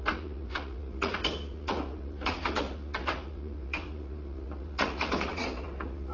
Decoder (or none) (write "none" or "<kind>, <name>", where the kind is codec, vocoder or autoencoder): vocoder, Vocos